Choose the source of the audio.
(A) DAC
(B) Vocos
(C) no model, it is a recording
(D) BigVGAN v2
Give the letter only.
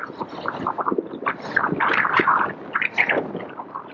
C